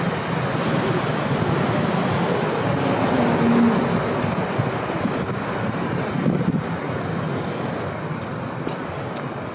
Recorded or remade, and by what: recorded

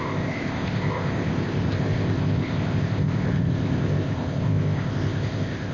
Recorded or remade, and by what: remade, codec, ZipCodec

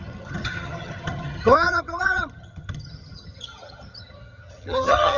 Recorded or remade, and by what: remade, vocoder, HiFi-GAN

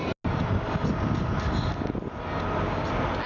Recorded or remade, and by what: recorded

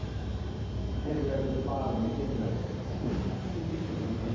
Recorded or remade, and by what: remade, vocoder, BigVGAN v2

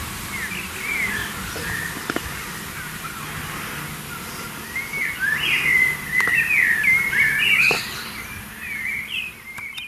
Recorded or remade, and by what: recorded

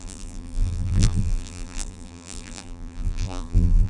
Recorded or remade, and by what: remade, vocoder, BigVGAN v2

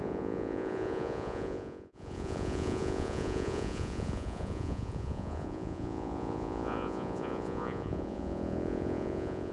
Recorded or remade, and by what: remade, vocoder, Vocos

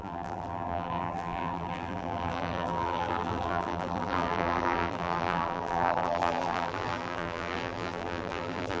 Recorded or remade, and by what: remade, vocoder, BigVGAN v2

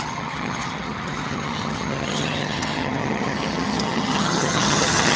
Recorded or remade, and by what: remade, vocoder, HiFi-GAN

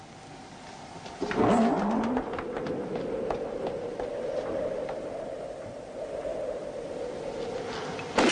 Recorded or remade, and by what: recorded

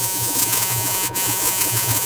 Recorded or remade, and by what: remade, vocoder, Vocos